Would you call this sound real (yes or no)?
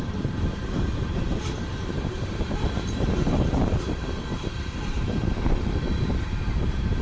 no